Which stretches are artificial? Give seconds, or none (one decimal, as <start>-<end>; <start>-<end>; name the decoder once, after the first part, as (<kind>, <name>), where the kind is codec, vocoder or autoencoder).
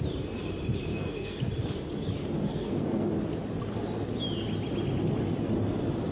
0.9-1.4 (codec, SNAC); 2.5-3.1